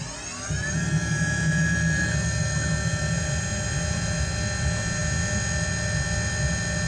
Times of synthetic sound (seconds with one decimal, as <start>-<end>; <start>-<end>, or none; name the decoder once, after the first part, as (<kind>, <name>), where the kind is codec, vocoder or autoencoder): none